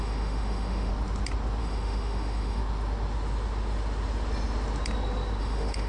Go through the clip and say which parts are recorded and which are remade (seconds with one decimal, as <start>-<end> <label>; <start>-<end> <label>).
0.0-0.9 remade; 0.9-1.6 recorded; 1.6-2.6 remade; 2.6-5.4 recorded; 5.4-5.9 remade